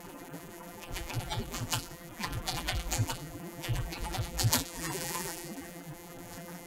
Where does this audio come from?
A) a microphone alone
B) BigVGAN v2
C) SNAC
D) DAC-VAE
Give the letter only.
B